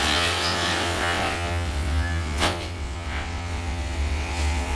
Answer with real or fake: fake